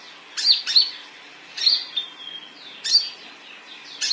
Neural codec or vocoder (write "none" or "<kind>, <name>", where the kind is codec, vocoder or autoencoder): none